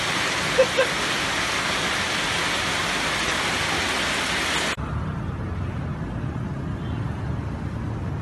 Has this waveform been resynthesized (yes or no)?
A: no